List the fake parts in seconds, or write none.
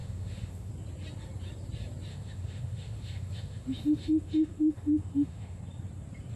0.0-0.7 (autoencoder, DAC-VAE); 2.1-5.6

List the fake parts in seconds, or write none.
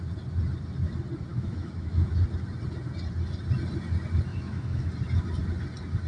1.3-2.1 (autoencoder, DAC-VAE); 4.3-4.9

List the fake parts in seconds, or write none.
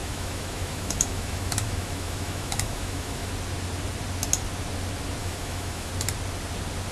0.0-3.3 (autoencoder, DAC-VAE); 5.2-5.9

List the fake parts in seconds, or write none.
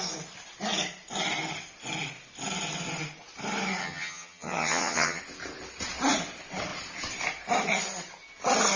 3.8-5.2 (vocoder, HiFi-GAN)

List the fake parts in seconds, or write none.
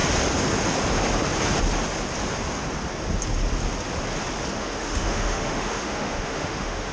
4.6-6.9 (autoencoder, DAC-VAE)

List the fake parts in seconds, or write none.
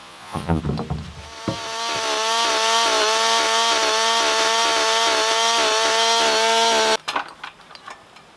0.0-0.6 (vocoder, Vocos)